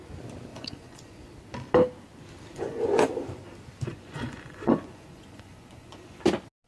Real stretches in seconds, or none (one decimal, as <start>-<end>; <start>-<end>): 0.0-0.5; 1.2-2.5; 3.1-3.9; 6.2-6.7

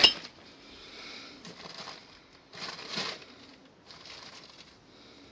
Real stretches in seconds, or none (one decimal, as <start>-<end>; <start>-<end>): 2.9-5.3